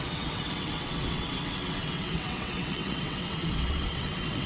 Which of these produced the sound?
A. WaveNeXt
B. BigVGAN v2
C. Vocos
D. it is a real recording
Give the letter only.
A